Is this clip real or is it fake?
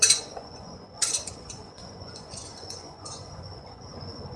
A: fake